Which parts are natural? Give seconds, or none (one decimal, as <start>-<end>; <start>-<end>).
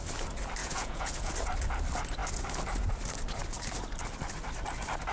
0.0-0.6; 1.3-5.1